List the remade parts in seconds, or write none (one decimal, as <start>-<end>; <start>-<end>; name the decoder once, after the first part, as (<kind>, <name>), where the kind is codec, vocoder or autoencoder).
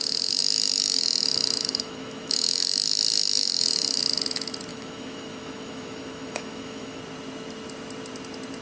0.4-4.0 (autoencoder, DAC-VAE); 4.7-7.0